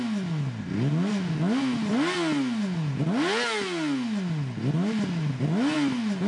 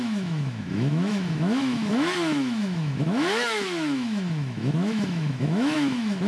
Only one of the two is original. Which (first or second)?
first